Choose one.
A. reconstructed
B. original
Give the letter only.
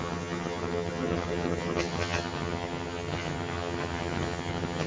A